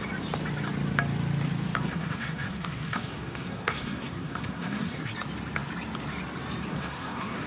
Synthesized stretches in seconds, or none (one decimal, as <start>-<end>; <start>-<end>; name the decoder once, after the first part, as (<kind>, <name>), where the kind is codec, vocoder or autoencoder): 1.8-5.1 (codec, SNAC); 6.7-7.5